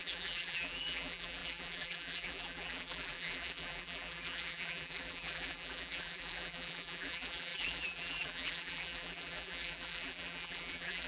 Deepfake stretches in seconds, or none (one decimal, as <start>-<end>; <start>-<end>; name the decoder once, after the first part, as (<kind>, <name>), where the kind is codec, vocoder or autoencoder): 0.0-11.1 (vocoder, BigVGAN v2)